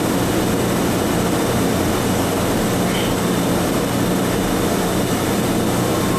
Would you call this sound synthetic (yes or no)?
no